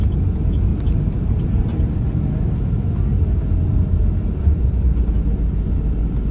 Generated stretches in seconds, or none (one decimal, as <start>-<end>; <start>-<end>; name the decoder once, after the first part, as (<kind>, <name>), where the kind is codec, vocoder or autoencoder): 0.7-2.3 (vocoder, BigVGAN v2); 3.7-5.1